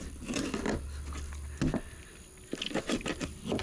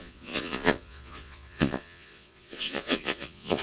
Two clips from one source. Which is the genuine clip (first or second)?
first